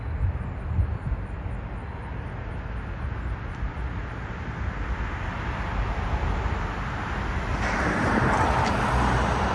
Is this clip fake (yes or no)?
no